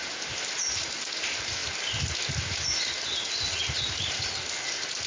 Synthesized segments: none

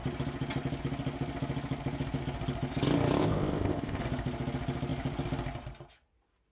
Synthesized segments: 3.2-4.0 (codec, ZipCodec)

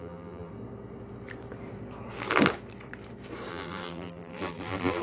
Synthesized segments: 0.0-0.5 (vocoder, BigVGAN v2); 3.5-5.0

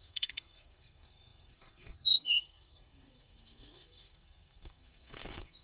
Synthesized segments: 0.0-5.6 (codec, SNAC)

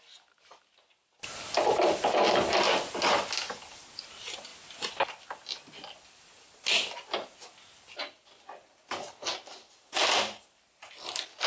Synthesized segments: none

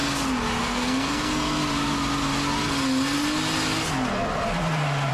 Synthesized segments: 0.6-1.6 (codec, SNAC)